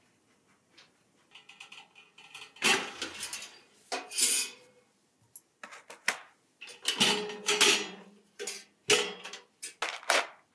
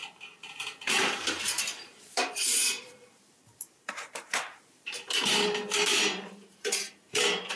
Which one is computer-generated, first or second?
second